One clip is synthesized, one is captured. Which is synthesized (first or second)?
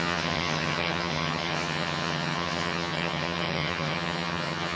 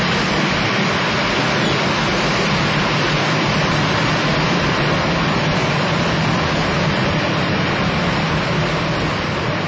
first